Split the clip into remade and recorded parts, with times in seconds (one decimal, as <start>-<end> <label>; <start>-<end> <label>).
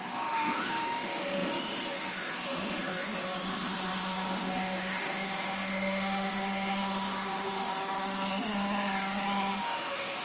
0.0-7.7 remade; 7.7-9.5 recorded; 9.5-10.2 remade